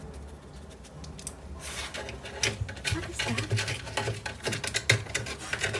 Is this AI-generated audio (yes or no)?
no